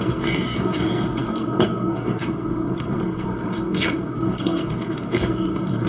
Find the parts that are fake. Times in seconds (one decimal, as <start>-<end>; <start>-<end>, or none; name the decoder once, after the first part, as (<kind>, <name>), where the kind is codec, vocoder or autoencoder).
0.0-5.9 (codec, SNAC)